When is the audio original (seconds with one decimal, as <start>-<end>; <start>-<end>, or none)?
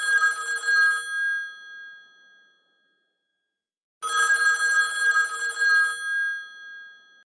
0.0-7.4